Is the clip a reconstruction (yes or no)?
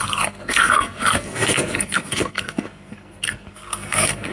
yes